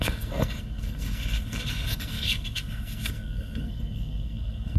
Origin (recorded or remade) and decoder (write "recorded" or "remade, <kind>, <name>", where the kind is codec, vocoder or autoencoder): remade, codec, SNAC